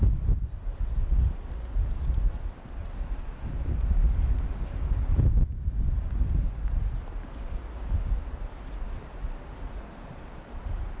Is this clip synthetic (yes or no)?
no